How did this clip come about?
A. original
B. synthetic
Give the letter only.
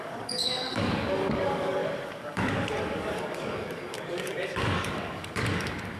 B